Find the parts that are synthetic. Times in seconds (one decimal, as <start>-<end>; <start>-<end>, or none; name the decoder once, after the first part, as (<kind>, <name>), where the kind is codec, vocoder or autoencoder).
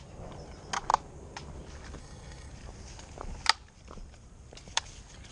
2.0-2.5 (codec, SNAC)